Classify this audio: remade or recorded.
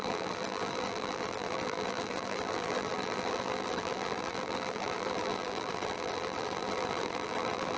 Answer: remade